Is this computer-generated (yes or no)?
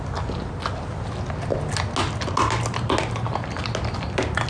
no